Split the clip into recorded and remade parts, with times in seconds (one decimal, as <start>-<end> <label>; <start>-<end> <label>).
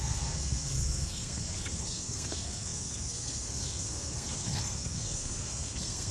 0.0-6.1 remade